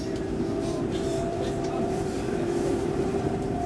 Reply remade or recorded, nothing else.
remade